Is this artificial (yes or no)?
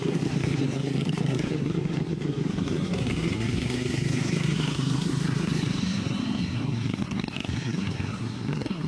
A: yes